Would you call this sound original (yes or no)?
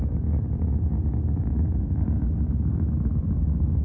no